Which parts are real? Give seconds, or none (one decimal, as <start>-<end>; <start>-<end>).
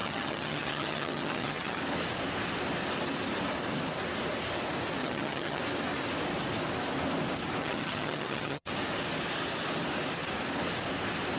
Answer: 1.8-5.0; 5.6-7.6; 8.7-11.4